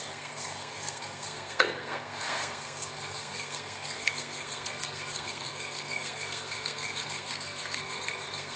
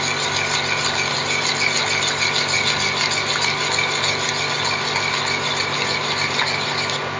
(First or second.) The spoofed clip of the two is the first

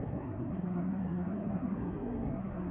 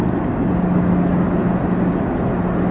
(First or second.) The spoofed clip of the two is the first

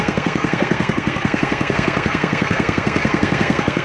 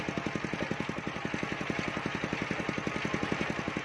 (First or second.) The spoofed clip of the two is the first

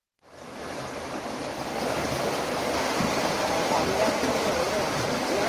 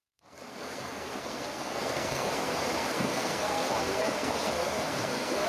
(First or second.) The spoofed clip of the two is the second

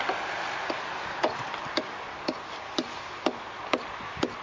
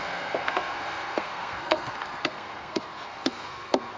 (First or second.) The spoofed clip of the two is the second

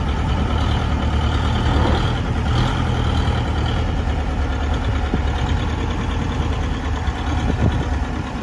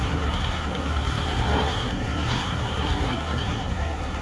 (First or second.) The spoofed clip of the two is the second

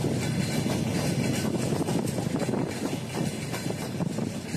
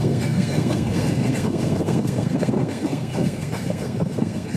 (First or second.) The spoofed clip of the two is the second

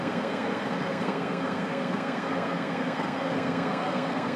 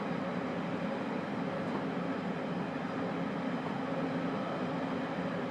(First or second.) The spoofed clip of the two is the first